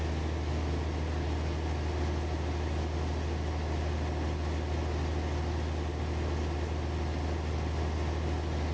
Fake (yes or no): no